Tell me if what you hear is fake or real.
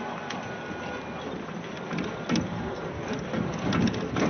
real